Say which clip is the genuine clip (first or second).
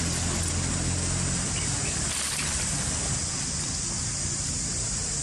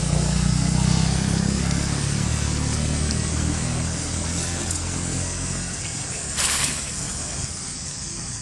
first